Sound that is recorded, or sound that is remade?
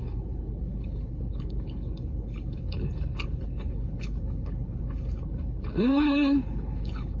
remade